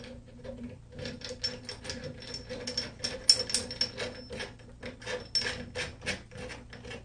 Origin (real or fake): real